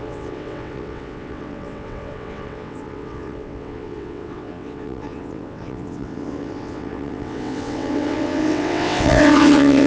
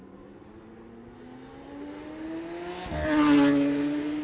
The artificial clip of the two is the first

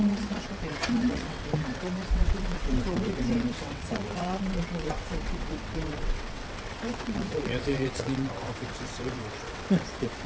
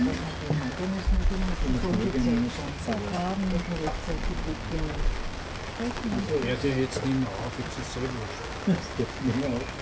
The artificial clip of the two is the first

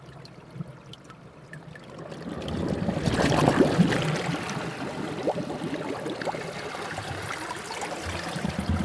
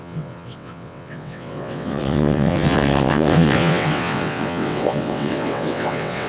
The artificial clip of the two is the second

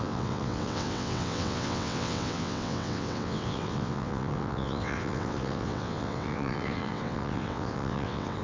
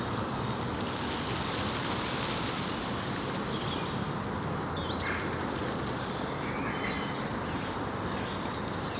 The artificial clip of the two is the first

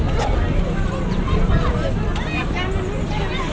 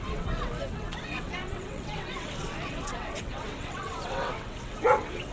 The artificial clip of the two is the second